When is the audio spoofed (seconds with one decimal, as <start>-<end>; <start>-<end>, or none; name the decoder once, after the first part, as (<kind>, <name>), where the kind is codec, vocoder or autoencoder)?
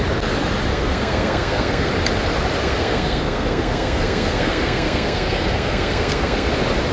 0.7-1.9 (codec, SNAC); 2.6-6.5